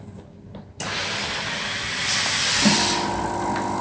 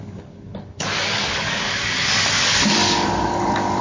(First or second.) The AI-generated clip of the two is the second